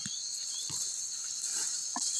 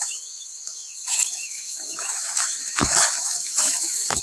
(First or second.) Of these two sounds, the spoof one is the second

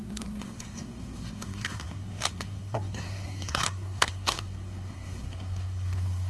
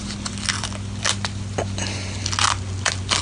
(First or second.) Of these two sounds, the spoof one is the first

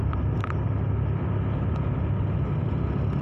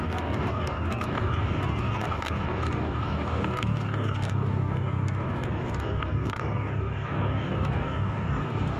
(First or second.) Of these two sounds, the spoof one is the second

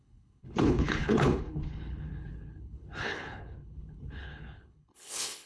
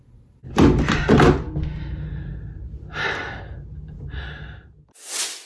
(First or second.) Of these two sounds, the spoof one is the first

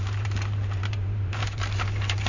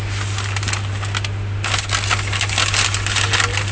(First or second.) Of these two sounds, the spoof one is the first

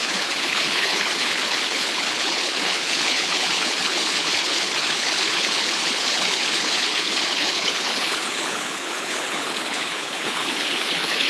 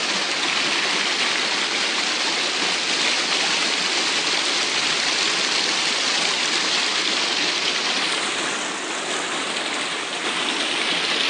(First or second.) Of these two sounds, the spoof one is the first